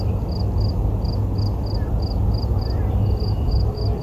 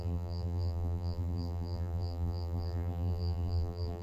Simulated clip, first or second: second